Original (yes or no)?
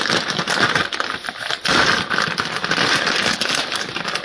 yes